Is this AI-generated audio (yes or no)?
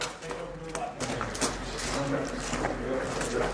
no